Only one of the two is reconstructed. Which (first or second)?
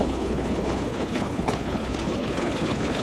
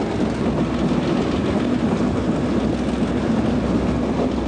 first